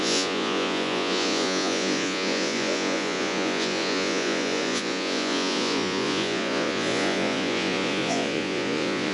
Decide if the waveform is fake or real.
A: fake